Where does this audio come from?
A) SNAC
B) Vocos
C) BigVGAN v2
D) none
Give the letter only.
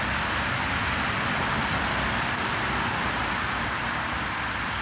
C